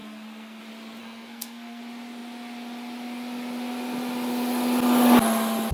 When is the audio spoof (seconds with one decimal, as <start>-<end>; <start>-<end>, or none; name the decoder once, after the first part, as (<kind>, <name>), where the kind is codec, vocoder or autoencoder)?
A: 0.0-0.6 (codec, SNAC); 1.0-1.8

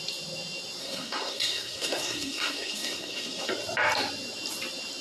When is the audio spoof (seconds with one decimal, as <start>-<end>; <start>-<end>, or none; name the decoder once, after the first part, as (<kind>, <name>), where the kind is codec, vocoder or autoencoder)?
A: 0.8-3.5 (codec, SNAC)

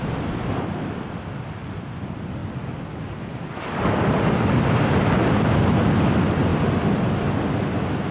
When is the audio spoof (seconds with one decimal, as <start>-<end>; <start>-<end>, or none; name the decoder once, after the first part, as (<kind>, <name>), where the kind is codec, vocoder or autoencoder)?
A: none

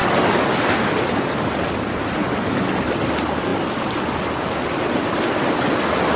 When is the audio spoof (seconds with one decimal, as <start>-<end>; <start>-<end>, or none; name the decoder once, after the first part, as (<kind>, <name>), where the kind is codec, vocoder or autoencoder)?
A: none

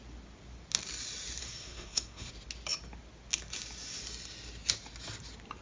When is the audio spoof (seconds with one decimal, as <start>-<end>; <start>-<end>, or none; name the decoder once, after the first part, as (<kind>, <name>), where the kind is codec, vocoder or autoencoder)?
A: 1.4-2.3 (codec, SNAC)

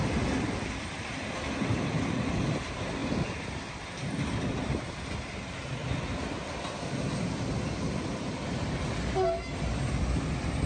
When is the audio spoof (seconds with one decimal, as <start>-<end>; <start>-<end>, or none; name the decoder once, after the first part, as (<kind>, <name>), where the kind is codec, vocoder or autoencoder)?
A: none

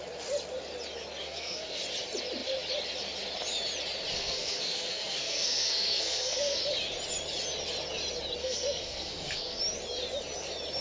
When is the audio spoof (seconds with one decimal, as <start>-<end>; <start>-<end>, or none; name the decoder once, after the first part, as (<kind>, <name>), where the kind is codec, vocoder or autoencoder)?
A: 1.2-1.8 (codec, SNAC); 4.1-6.6; 8.4-9.6

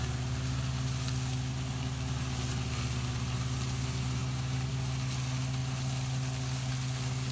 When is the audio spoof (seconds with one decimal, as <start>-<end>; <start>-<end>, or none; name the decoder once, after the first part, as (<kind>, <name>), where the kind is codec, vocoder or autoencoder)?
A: none